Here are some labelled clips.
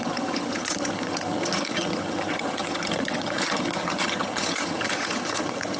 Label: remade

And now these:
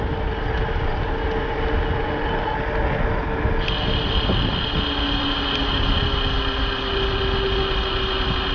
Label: recorded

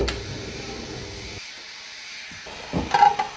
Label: recorded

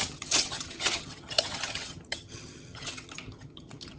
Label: remade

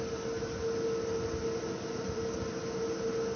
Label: recorded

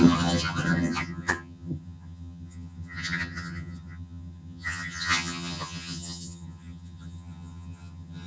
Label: remade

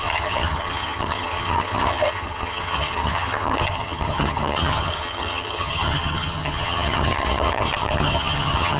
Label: remade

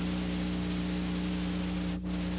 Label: recorded